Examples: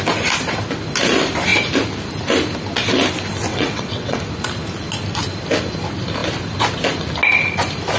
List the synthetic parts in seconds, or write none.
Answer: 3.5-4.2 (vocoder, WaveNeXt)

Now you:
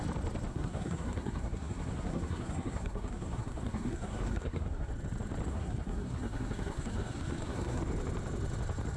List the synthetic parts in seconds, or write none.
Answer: 0.5-4.9 (codec, SNAC); 5.5-7.8

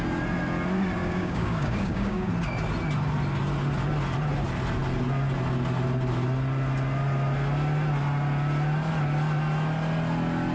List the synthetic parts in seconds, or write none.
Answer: 1.0-2.3 (codec, DAC)